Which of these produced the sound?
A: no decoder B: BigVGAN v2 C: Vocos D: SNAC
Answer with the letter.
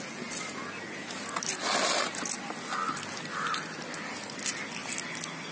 A